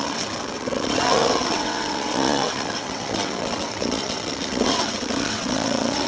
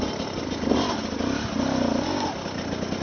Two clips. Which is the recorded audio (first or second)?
second